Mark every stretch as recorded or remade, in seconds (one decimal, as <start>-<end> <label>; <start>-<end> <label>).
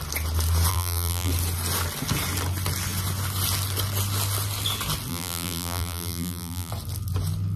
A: 0.0-0.7 recorded; 0.7-1.3 remade; 1.3-5.1 recorded; 5.1-6.7 remade; 6.7-7.6 recorded